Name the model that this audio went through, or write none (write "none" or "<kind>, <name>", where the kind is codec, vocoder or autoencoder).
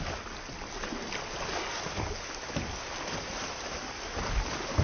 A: none